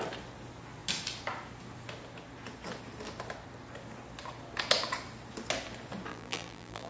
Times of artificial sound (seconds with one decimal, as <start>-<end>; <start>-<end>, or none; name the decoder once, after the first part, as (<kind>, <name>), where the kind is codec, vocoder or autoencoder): 6.1-6.9 (vocoder, BigVGAN v2)